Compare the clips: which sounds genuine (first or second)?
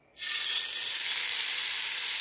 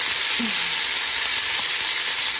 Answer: first